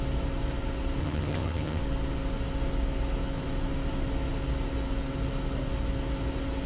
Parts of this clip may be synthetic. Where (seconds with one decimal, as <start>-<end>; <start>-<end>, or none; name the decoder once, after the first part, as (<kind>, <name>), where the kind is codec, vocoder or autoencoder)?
1.0-1.8 (vocoder, HiFi-GAN)

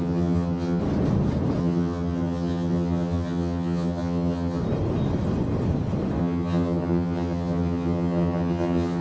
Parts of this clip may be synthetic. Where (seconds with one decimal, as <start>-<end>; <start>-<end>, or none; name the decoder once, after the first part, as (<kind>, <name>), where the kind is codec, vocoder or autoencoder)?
0.0-0.8 (vocoder, HiFi-GAN); 1.6-4.6; 6.2-9.0

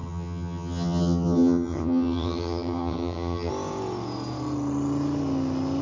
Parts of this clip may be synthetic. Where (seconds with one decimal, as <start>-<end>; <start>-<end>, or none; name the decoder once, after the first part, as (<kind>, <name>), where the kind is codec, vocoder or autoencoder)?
0.0-3.5 (vocoder, HiFi-GAN)

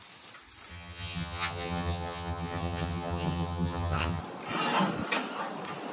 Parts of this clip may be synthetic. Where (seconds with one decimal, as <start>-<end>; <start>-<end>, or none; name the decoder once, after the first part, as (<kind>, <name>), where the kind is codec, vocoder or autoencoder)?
0.7-4.2 (vocoder, HiFi-GAN)

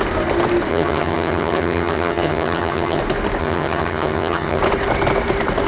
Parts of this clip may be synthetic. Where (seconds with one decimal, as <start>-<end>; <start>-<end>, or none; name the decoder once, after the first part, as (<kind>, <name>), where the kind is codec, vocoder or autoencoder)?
0.7-3.0 (vocoder, HiFi-GAN); 3.4-4.6

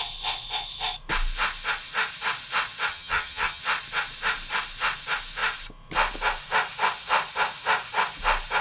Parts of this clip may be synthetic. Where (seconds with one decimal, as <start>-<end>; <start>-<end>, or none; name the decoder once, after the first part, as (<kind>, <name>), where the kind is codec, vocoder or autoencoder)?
2.9-3.6 (vocoder, HiFi-GAN)